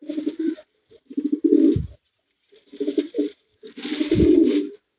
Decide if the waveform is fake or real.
real